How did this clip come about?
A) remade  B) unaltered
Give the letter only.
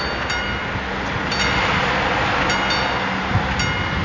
B